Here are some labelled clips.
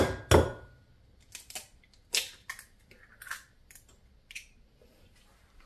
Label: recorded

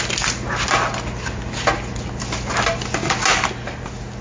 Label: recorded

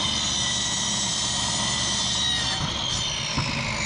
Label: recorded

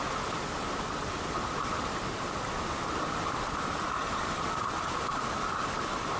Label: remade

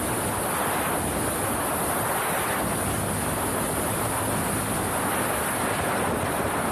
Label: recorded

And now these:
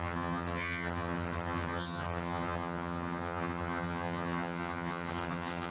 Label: remade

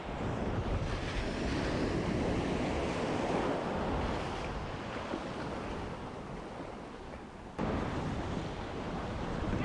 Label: recorded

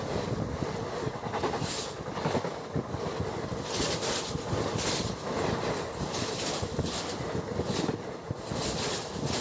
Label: recorded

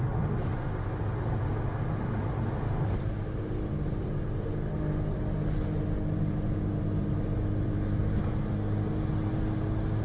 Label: recorded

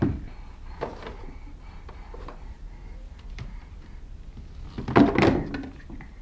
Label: recorded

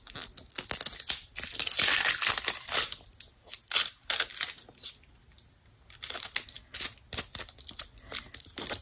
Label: recorded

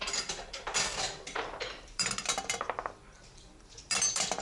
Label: remade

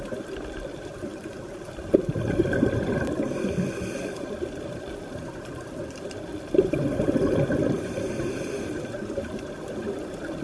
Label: remade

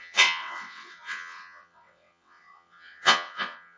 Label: remade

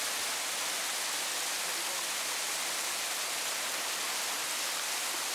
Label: recorded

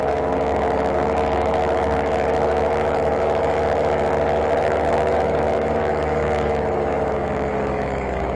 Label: remade